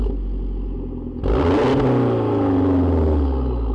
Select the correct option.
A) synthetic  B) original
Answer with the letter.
B